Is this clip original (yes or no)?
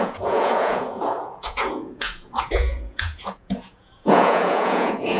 no